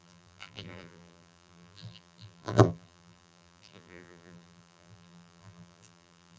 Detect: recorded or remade remade